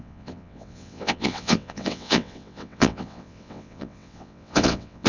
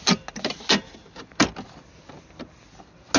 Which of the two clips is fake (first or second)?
first